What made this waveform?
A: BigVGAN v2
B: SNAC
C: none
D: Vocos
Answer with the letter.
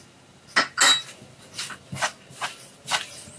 C